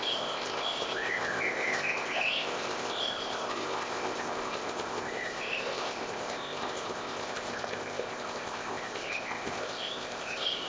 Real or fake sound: fake